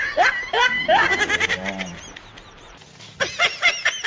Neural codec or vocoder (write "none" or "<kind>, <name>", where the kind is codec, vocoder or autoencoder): none